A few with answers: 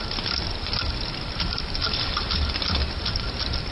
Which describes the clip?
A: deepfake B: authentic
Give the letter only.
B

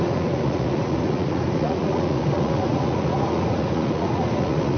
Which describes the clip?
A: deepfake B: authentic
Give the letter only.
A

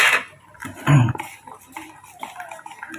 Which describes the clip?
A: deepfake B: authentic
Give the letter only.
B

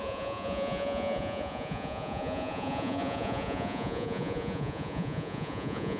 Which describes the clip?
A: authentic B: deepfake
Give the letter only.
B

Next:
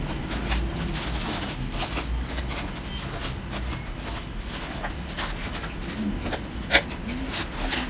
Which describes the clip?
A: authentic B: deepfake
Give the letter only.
A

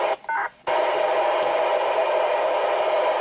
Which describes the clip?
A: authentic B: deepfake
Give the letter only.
A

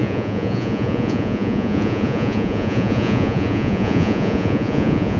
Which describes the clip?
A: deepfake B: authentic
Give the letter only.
A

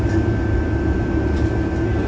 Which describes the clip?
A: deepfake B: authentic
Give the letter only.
B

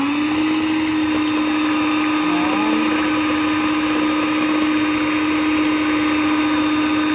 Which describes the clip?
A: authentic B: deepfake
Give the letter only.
A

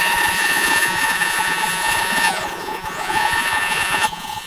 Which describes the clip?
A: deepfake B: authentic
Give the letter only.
A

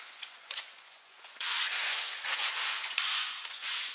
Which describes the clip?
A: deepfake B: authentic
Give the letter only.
A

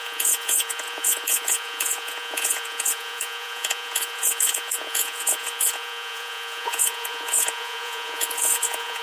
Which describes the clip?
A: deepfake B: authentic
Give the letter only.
A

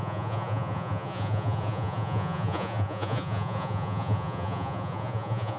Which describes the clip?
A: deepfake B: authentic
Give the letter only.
A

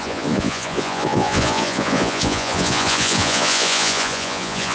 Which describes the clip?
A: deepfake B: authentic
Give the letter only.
A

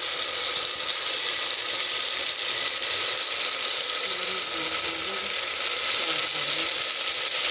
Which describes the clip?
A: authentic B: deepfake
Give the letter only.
A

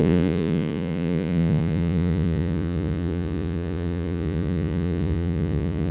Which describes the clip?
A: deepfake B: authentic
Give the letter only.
A